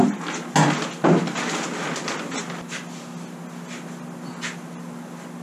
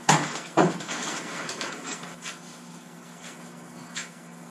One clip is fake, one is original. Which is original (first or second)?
first